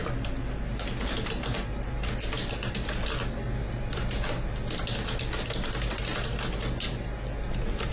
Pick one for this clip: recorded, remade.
recorded